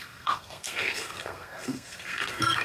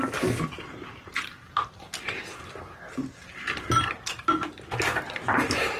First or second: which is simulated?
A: first